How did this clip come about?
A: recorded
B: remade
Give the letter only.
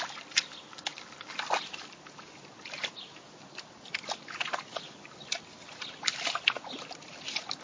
A